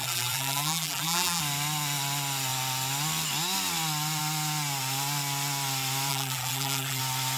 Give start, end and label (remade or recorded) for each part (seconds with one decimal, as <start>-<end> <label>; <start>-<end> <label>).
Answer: 0.0-1.4 remade; 1.4-6.1 recorded; 6.1-7.0 remade; 7.0-7.4 recorded